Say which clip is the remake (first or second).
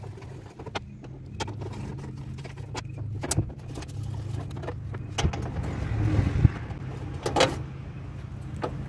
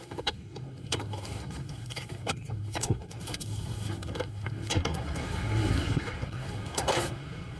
second